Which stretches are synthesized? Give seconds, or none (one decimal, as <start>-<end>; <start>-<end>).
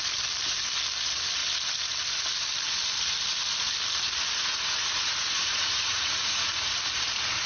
4.8-6.5